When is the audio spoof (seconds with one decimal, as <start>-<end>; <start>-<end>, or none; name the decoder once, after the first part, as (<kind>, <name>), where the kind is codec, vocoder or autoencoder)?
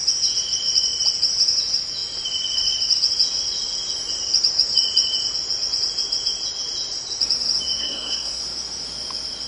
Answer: 7.8-8.4 (codec, SNAC)